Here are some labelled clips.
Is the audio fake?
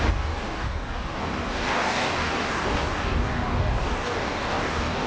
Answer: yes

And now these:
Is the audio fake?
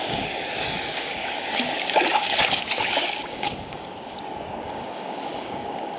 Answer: yes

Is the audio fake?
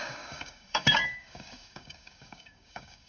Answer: yes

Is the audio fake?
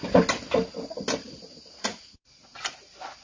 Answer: no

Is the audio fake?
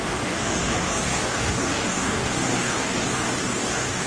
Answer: yes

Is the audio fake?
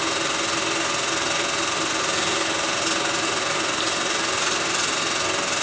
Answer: no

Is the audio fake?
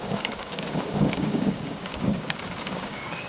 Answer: yes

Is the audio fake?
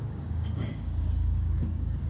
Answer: yes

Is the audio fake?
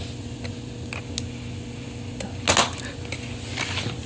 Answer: no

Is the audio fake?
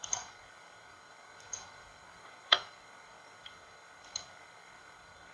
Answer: yes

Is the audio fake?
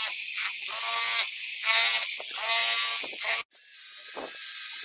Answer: no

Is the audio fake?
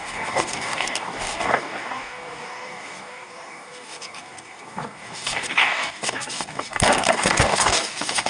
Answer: yes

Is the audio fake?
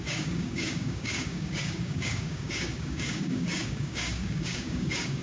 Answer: yes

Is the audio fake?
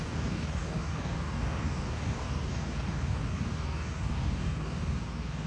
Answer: yes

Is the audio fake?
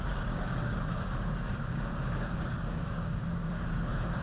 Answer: yes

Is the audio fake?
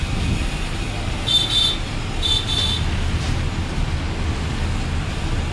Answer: no